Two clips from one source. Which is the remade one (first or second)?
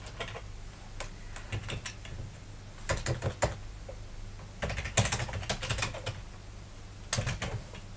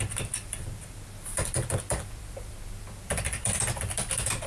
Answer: second